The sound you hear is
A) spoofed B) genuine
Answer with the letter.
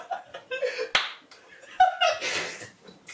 B